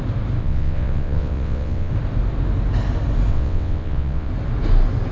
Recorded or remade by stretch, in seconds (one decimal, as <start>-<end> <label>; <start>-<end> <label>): 0.0-0.4 recorded; 0.4-1.9 remade; 1.9-3.3 recorded; 3.3-4.3 remade; 4.3-5.1 recorded